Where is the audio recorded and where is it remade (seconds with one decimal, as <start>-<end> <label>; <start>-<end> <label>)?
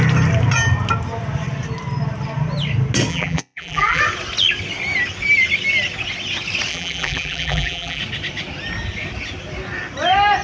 0.0-3.1 recorded; 3.1-4.0 remade; 4.0-6.7 recorded; 6.7-8.0 remade; 8.0-10.4 recorded